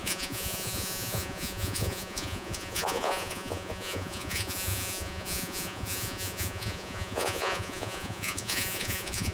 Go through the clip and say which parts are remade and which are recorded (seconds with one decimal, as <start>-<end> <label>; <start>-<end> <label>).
0.0-9.3 remade